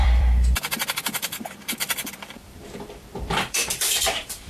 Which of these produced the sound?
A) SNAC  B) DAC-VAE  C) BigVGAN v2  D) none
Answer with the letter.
C